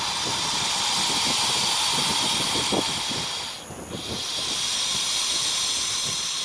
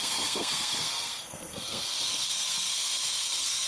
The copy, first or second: second